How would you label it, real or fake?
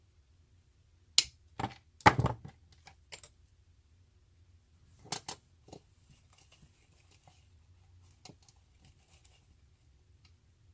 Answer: real